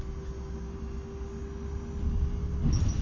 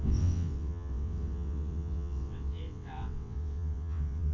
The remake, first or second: second